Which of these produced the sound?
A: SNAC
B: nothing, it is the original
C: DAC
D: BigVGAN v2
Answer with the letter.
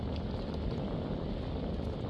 B